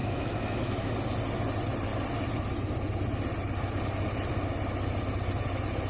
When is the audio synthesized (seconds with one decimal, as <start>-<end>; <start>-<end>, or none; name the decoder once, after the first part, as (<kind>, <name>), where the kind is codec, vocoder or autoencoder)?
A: 0.0-0.9 (autoencoder, DAC-VAE)